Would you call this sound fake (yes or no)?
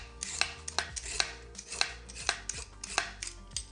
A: no